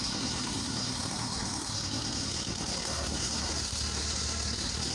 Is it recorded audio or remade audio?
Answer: remade